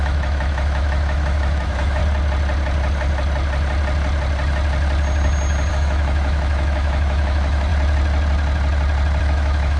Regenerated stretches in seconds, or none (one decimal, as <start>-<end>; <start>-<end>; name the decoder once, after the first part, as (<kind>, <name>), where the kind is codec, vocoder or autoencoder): 0.0-2.0 (autoencoder, DAC-VAE); 5.7-7.7; 9.2-9.8